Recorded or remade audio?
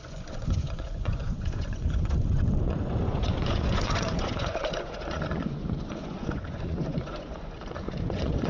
remade